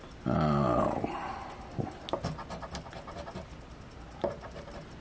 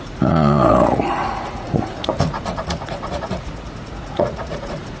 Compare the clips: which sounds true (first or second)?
first